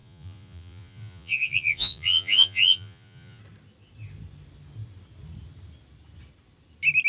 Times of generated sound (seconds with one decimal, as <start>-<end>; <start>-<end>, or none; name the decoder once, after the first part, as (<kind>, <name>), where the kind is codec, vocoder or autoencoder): 0.0-3.4 (vocoder, Vocos)